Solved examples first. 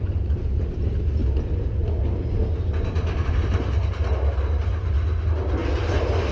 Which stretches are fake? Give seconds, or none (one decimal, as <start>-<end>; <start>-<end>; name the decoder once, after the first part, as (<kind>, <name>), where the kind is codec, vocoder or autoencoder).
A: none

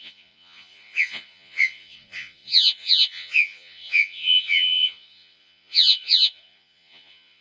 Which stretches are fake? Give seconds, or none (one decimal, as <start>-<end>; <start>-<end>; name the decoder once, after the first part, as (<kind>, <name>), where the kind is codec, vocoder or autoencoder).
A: 0.0-7.4 (vocoder, Vocos)

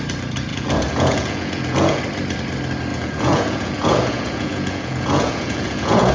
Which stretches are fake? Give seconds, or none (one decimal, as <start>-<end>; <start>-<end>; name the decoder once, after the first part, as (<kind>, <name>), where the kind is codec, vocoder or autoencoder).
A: 0.5-2.0 (vocoder, Vocos); 2.9-6.1

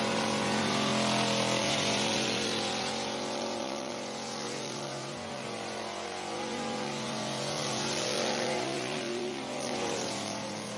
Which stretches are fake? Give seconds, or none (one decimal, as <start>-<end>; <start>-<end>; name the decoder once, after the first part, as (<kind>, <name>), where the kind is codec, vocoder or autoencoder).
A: 0.0-0.9 (vocoder, Vocos); 1.6-10.8